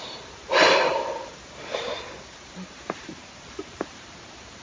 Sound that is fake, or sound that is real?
fake